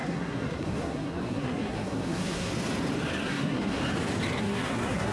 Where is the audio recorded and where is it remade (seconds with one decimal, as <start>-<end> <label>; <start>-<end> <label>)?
0.0-2.5 remade; 2.5-3.2 recorded; 3.2-3.8 remade; 3.8-4.4 recorded; 4.4-5.1 remade